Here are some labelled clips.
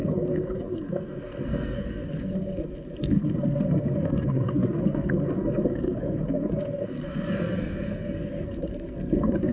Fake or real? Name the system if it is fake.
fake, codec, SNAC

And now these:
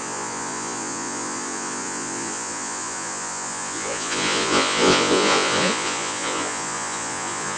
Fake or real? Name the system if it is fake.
fake, vocoder, Vocos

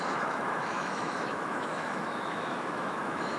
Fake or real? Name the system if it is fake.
fake, autoencoder, DAC-VAE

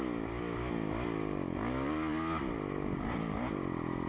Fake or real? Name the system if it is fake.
real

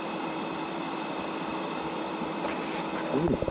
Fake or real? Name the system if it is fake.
fake, vocoder, BigVGAN v2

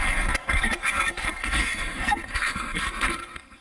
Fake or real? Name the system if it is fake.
fake, codec, SNAC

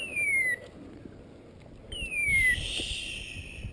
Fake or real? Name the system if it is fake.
real